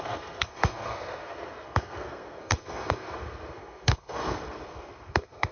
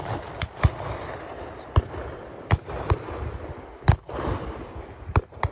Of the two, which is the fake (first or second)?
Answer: first